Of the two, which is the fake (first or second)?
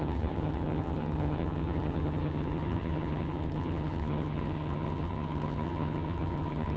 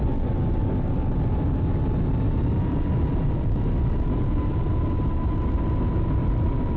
first